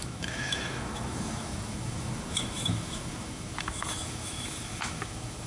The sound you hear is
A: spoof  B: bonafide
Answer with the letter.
A